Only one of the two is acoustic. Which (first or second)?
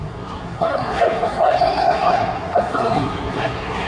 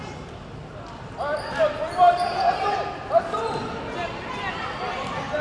second